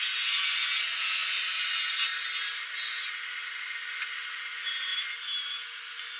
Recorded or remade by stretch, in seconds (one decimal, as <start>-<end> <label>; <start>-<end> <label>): 0.0-6.2 recorded